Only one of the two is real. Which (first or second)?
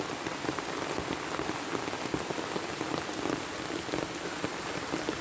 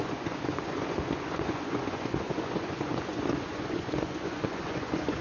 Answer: first